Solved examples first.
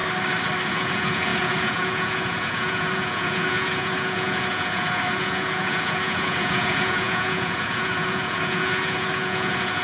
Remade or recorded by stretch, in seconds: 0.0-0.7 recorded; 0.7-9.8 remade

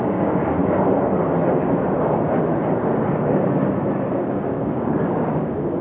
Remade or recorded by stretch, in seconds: 0.0-0.6 remade; 0.6-4.1 recorded; 4.1-5.8 remade

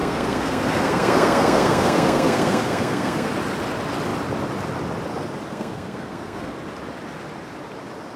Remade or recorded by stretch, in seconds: 0.0-3.3 remade; 3.3-5.5 recorded; 5.5-6.5 remade; 6.5-8.2 recorded

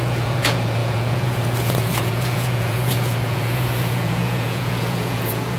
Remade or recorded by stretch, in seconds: 0.0-5.6 remade